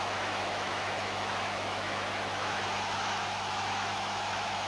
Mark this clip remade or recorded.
remade